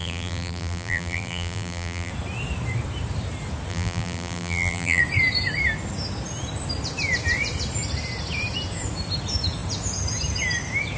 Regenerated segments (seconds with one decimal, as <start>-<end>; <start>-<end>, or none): 0.0-2.1; 3.7-5.0